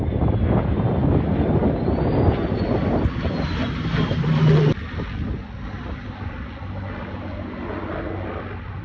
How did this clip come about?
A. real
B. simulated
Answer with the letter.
A